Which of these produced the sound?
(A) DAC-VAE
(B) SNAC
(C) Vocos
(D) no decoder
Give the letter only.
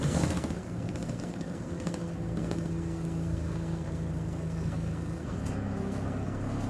B